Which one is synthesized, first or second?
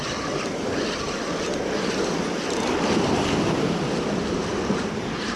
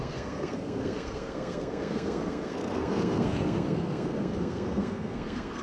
second